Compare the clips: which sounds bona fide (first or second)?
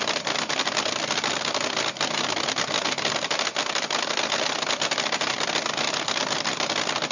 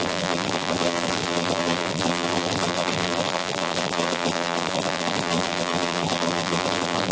first